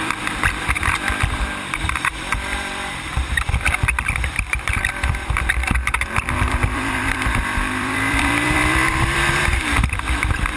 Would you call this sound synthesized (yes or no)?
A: yes